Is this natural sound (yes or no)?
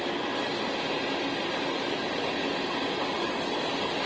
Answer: yes